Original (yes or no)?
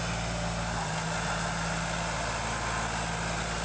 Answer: yes